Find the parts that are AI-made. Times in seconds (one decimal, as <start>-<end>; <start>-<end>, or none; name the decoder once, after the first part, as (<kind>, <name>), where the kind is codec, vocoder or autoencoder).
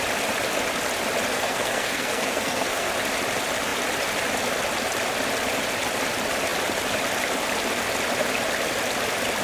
1.3-2.9 (codec, SNAC)